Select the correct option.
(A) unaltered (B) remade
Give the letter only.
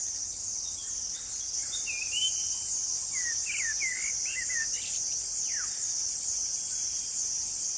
A